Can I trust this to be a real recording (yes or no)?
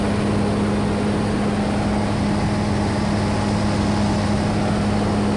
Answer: yes